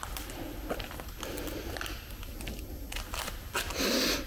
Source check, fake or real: real